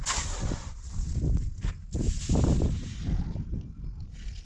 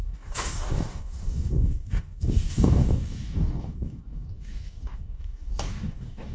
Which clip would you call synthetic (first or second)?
second